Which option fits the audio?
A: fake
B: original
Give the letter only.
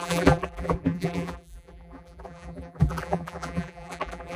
A